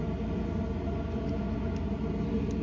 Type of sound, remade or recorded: recorded